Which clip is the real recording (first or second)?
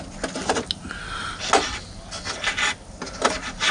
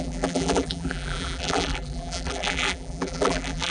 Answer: first